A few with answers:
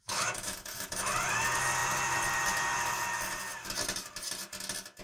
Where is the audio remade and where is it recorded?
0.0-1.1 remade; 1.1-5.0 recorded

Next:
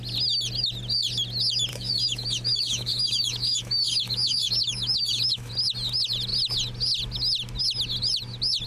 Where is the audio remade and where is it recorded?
0.0-1.7 recorded; 1.7-5.5 remade; 5.5-8.7 recorded

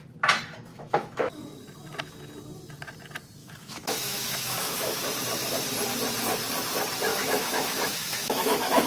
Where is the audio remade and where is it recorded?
0.0-0.7 recorded; 0.7-1.4 remade; 1.4-3.4 recorded; 3.4-5.0 remade; 5.0-7.1 recorded; 7.1-8.9 remade

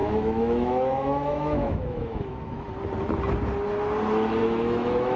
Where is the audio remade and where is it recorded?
0.0-2.7 remade; 2.7-4.4 recorded; 4.4-5.2 remade

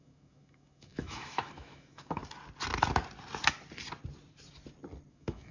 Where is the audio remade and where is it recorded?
0.0-2.2 remade; 2.2-5.1 recorded; 5.1-5.5 remade